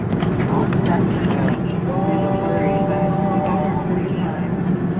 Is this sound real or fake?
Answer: real